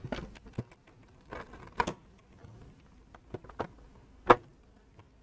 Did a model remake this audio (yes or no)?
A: no